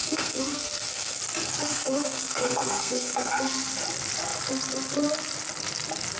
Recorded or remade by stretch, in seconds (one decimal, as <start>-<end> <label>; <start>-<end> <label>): 0.0-1.2 remade; 1.2-1.7 recorded; 1.7-3.3 remade; 3.3-6.2 recorded